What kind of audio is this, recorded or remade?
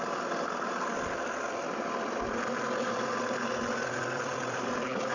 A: recorded